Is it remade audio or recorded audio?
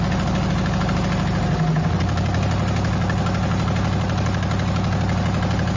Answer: recorded